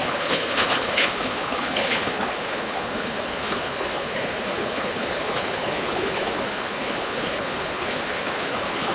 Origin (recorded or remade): remade